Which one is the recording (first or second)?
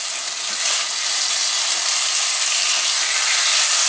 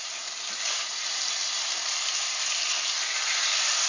first